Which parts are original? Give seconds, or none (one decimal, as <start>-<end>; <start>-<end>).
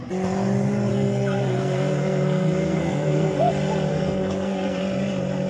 0.0-0.9; 3.5-3.9; 4.8-5.5